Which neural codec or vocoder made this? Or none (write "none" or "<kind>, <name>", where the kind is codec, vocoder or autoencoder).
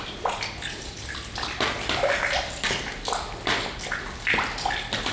none